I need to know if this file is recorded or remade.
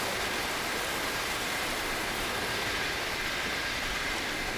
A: recorded